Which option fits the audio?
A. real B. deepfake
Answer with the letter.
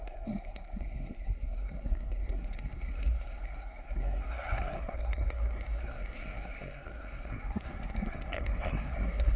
B